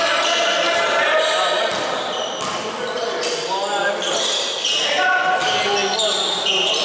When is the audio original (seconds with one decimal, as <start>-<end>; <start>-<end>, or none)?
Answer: 0.0-6.8